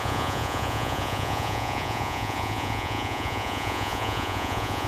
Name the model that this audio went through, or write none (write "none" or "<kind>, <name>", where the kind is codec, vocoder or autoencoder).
vocoder, Vocos